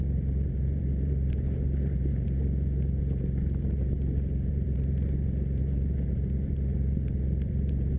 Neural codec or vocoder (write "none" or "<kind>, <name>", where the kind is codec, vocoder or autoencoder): vocoder, BigVGAN v2